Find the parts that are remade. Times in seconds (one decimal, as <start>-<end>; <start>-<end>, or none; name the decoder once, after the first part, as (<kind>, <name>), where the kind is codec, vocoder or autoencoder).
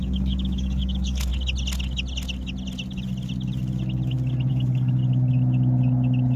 0.0-1.3 (codec, DAC); 4.5-5.0